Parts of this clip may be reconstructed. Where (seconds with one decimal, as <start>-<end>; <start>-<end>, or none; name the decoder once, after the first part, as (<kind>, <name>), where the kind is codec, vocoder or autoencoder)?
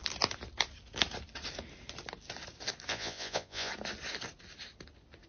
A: 2.9-3.7 (vocoder, Vocos)